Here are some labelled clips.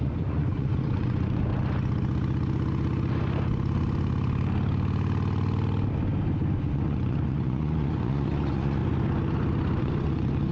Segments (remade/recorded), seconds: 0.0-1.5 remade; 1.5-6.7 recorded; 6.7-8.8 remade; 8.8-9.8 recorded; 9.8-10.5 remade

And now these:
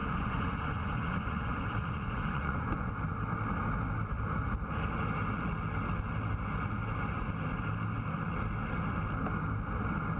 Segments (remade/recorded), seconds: 0.0-2.9 remade; 2.9-10.2 recorded

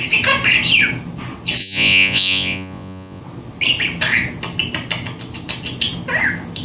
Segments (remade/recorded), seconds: 0.0-1.6 recorded; 1.6-3.2 remade; 3.2-6.6 recorded

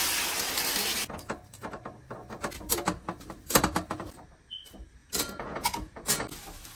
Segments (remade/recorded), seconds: 0.0-5.0 recorded; 5.0-6.2 remade; 6.2-6.8 recorded

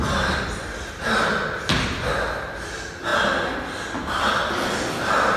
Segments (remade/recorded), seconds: 0.0-5.4 recorded

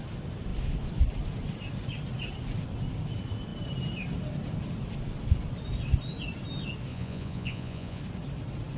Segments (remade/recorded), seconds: 0.0-6.9 recorded; 6.9-8.0 remade; 8.0-8.8 recorded